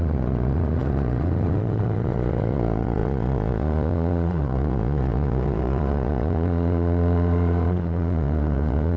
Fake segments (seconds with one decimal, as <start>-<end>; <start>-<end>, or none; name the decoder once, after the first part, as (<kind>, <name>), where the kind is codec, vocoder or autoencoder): 0.0-9.0 (vocoder, Vocos)